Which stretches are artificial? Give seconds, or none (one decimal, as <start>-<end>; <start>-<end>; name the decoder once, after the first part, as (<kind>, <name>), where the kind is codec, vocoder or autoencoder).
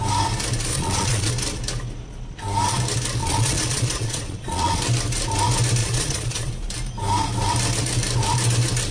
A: 0.7-1.3 (vocoder, Vocos); 3.2-4.8; 5.8-6.5